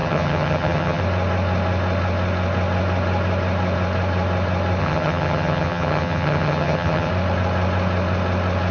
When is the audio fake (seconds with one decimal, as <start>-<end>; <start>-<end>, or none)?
0.0-1.0; 4.8-7.1